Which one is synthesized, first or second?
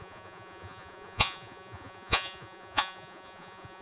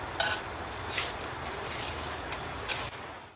first